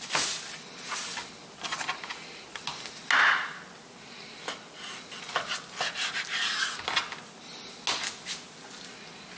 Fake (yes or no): no